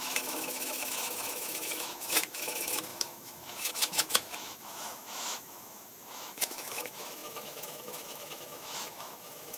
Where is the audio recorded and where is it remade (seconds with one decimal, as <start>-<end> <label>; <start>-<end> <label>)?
0.0-9.6 remade